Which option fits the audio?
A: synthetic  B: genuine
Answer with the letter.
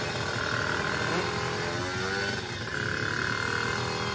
B